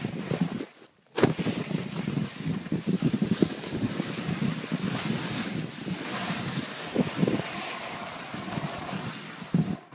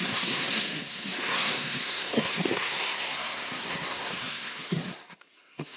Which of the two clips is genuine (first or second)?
first